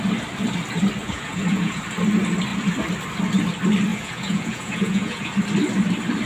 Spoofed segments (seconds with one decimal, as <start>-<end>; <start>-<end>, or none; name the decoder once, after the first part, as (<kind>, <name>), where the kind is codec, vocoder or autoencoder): 1.0-1.8 (vocoder, Vocos); 3.9-5.3